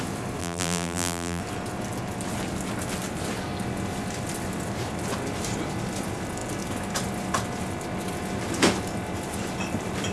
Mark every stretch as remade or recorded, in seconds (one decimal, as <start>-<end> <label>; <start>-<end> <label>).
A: 0.0-0.4 recorded; 0.4-1.4 remade; 1.4-10.1 recorded